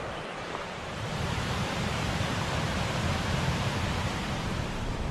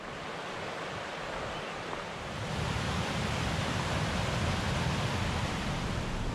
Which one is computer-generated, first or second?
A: first